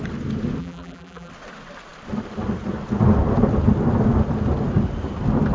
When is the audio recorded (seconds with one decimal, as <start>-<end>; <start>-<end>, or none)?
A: 0.0-0.6; 1.3-5.5